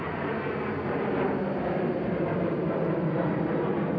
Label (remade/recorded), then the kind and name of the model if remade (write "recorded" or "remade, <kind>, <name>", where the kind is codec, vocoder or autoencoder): recorded